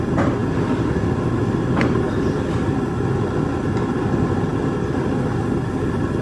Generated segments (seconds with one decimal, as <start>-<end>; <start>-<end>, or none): none